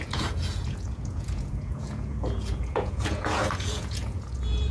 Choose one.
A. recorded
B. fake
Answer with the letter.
B